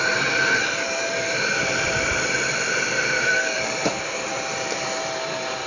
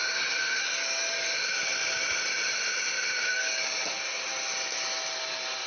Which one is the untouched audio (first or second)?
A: second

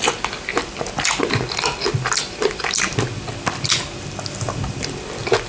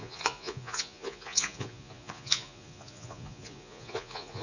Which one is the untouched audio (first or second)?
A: first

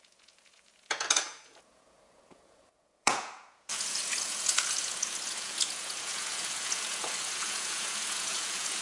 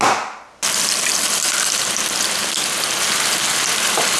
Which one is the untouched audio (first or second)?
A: second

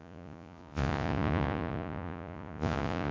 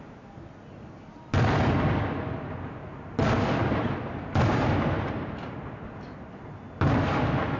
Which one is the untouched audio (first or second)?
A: second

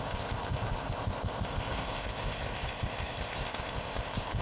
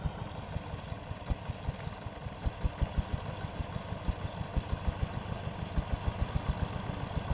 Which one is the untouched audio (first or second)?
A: second